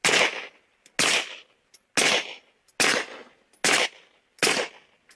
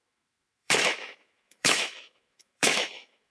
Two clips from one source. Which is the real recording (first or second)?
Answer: first